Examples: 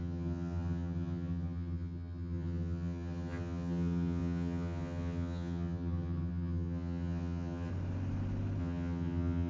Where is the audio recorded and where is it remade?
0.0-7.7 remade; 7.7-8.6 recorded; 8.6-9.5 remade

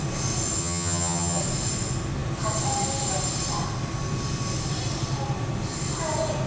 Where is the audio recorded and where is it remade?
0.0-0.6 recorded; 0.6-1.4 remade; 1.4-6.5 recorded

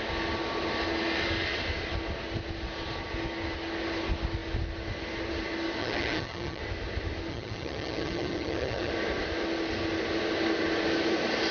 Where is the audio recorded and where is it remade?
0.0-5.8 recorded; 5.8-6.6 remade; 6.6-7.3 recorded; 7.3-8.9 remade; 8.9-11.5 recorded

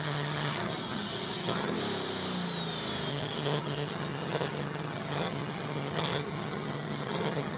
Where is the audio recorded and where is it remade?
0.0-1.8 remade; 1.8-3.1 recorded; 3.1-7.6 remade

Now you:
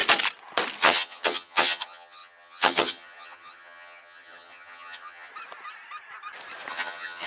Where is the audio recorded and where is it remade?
0.0-0.8 recorded; 0.8-5.3 remade; 5.3-6.7 recorded; 6.7-7.3 remade

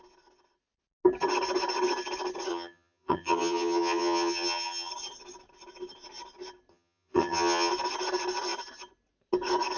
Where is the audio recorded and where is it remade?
0.0-2.5 recorded; 2.5-4.9 remade; 4.9-6.7 recorded; 6.7-7.7 remade; 7.7-9.8 recorded

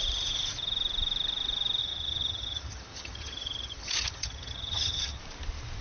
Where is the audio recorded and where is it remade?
0.0-1.8 recorded; 1.8-5.2 remade; 5.2-5.8 recorded